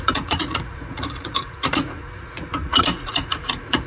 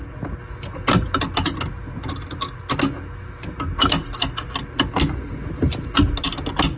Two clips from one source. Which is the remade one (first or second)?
first